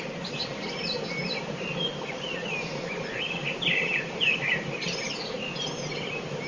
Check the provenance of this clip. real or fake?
real